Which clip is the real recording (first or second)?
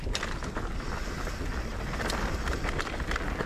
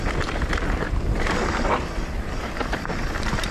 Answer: first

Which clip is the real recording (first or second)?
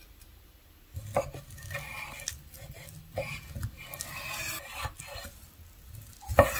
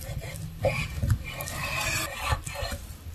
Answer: first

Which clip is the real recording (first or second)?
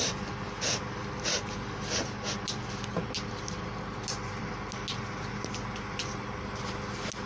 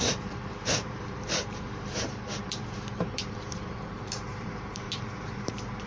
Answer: first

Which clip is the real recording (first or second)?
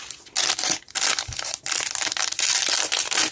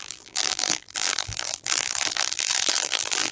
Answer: first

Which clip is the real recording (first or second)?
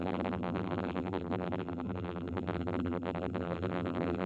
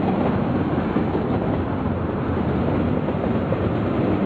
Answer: second